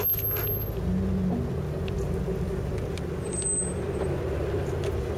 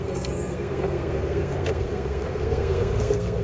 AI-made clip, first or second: second